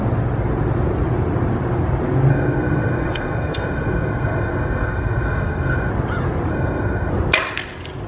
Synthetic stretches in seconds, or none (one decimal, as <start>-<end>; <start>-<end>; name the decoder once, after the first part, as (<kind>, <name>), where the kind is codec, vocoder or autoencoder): 2.3-5.9 (codec, SNAC); 6.5-7.1